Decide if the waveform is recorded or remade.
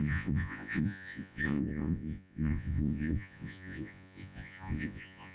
remade